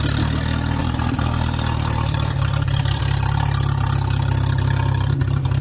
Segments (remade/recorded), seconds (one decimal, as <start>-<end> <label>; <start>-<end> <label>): 0.0-0.8 recorded; 0.8-3.0 remade; 3.0-5.6 recorded